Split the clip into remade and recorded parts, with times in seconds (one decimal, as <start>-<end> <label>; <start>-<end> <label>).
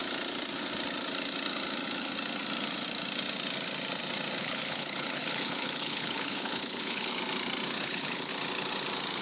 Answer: 0.0-4.4 recorded; 4.4-7.2 remade; 7.2-7.8 recorded; 7.8-8.3 remade; 8.3-9.2 recorded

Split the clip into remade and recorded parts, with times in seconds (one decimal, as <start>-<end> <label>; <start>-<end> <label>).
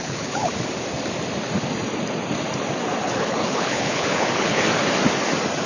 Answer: 0.0-0.5 remade; 0.5-3.0 recorded; 3.0-4.7 remade; 4.7-5.7 recorded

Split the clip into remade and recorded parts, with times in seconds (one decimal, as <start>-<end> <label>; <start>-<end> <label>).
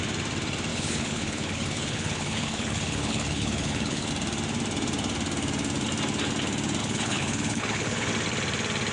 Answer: 0.0-0.7 recorded; 0.7-4.1 remade; 4.1-6.8 recorded; 6.8-8.1 remade; 8.1-8.9 recorded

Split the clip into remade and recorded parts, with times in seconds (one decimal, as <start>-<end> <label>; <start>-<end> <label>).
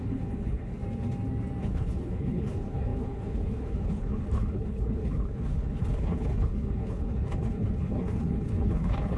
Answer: 0.0-0.8 remade; 0.8-1.6 recorded; 1.6-9.2 remade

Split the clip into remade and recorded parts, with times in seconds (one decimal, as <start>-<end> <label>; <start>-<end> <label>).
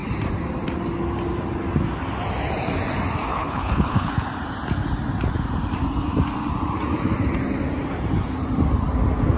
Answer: 0.0-3.3 recorded; 3.3-4.1 remade; 4.1-9.4 recorded